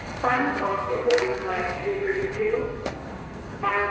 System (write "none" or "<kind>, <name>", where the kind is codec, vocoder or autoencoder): codec, SNAC